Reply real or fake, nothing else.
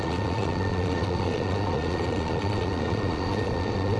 fake